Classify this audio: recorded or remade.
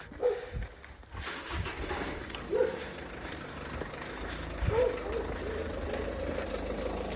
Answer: recorded